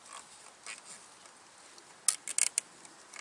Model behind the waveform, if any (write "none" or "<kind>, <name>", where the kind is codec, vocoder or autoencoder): none